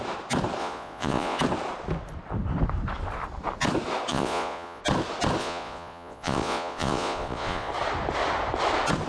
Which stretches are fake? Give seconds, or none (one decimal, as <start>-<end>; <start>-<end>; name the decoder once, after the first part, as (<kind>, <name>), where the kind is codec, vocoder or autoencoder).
0.6-1.4 (vocoder, Vocos); 4.1-4.8; 5.4-7.7